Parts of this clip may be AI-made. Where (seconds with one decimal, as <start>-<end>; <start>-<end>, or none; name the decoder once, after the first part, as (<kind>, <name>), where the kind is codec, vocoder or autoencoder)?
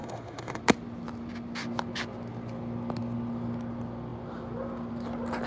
0.0-0.6 (autoencoder, DAC-VAE)